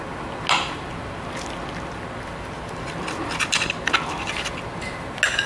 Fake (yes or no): no